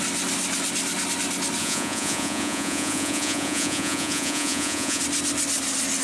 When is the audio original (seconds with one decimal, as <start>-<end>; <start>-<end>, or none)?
0.0-1.6; 5.0-6.0